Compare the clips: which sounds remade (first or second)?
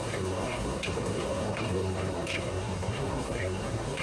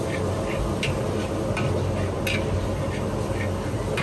first